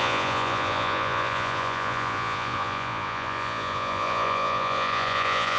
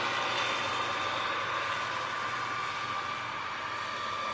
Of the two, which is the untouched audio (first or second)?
second